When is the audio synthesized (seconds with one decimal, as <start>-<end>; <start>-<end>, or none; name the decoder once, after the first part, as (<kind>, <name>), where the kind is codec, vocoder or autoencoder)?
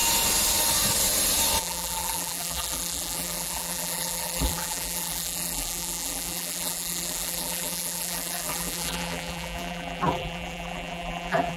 1.6-11.6 (vocoder, BigVGAN v2)